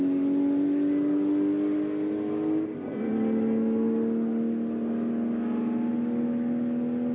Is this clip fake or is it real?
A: real